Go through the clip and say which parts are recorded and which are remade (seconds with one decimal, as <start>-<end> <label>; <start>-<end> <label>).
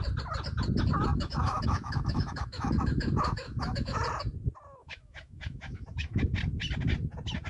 0.0-1.1 recorded; 1.1-4.0 remade; 4.0-4.8 recorded; 4.8-6.2 remade; 6.2-7.5 recorded